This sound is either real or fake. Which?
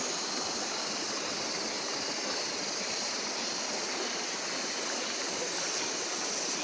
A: real